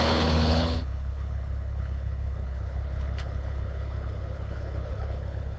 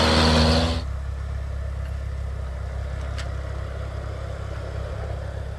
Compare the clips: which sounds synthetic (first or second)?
first